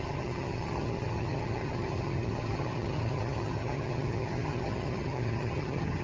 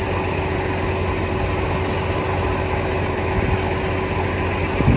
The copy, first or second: first